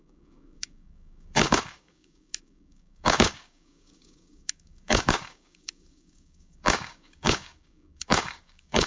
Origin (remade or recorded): remade